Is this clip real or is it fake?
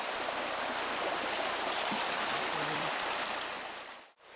fake